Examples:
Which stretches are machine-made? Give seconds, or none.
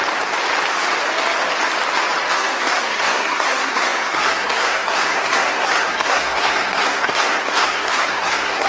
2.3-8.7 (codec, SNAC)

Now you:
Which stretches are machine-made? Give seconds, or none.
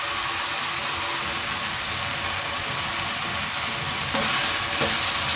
none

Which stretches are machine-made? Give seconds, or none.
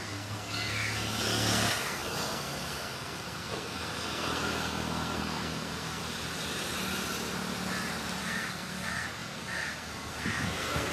0.0-6.0 (codec, SNAC); 8.2-10.9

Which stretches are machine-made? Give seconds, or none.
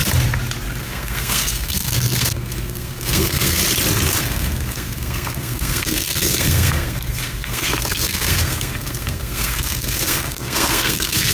0.8-3.6 (codec, SNAC); 4.2-11.3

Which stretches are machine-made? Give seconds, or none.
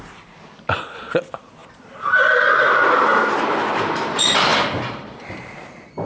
none